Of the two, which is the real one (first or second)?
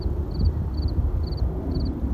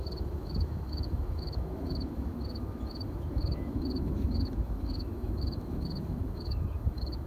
first